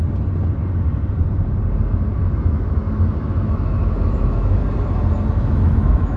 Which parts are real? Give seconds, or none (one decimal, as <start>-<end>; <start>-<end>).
0.0-2.1; 4.6-5.4